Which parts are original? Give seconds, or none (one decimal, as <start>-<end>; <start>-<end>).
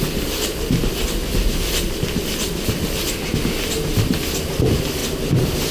0.0-5.7